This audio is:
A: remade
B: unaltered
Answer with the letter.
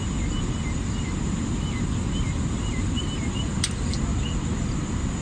B